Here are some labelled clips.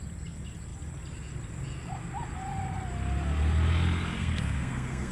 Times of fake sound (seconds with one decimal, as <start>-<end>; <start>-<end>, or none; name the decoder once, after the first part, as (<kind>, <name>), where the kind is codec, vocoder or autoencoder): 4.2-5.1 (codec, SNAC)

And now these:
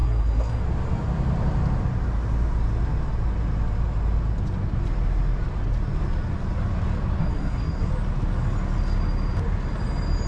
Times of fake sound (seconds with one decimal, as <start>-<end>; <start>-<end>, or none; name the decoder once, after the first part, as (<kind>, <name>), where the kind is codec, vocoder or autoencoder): 0.0-0.6 (codec, SNAC); 7.2-7.9

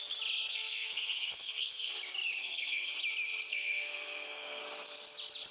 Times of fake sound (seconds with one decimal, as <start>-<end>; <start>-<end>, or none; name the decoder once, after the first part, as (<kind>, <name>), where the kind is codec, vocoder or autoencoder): 0.5-1.9 (codec, SNAC); 2.4-2.9; 3.5-4.6

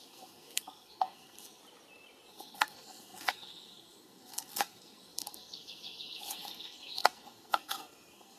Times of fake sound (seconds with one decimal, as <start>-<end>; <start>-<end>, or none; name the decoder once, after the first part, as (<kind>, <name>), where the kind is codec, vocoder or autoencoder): 0.0-1.6 (codec, SNAC); 2.3-8.4

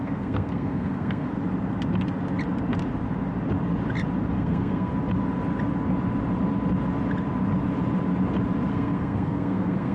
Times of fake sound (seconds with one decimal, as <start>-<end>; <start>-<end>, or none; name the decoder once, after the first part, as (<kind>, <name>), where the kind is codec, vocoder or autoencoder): 0.0-1.3 (codec, SNAC); 4.3-4.9; 8.7-9.9